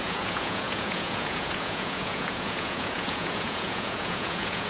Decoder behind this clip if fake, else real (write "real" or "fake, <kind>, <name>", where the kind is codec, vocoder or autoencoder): fake, vocoder, Vocos